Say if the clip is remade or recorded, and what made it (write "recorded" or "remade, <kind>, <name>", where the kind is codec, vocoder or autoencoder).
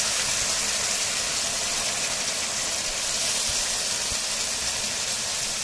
recorded